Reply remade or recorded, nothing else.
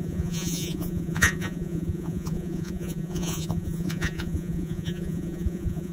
remade